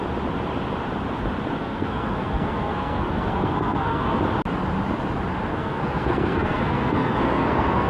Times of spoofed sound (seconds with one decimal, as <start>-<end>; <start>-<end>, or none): 1.6-4.2; 5.5-7.9